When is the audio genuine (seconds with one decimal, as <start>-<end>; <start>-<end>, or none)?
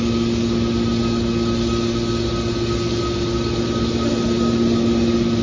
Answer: 0.0-5.4